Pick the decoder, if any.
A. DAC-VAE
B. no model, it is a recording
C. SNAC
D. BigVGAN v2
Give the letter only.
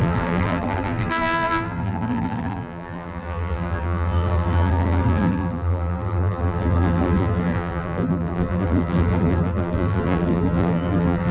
D